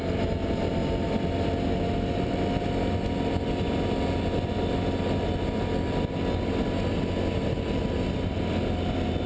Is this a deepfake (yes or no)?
no